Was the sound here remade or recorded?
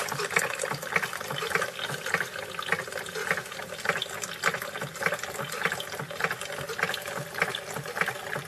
recorded